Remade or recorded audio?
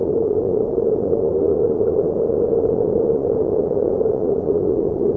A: remade